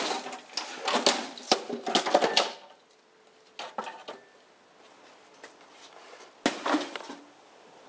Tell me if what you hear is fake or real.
real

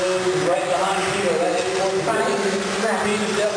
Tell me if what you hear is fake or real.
real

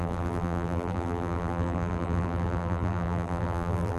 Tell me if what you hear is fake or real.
fake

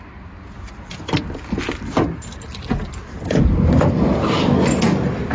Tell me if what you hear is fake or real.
real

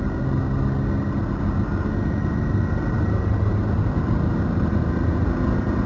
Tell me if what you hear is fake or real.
real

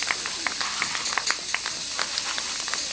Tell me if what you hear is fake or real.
real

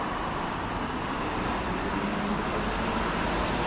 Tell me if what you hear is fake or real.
real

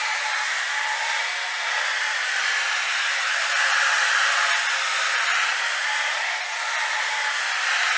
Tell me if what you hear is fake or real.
real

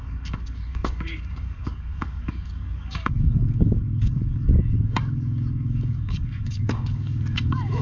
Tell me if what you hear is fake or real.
fake